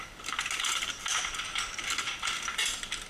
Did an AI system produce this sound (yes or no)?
no